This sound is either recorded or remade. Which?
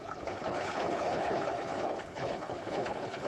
remade